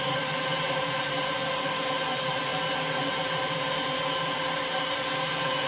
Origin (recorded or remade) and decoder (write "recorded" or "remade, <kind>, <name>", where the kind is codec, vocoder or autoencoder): recorded